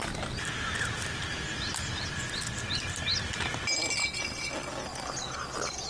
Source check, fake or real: real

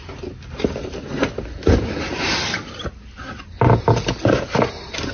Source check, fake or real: real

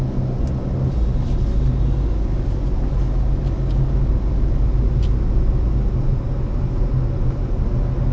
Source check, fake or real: real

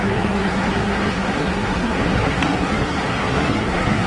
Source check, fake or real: fake